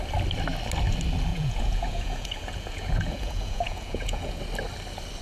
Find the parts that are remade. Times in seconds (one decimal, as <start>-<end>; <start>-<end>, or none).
1.3-4.4